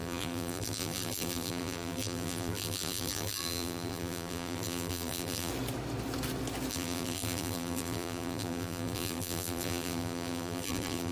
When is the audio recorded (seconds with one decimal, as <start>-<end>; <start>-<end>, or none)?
5.5-6.7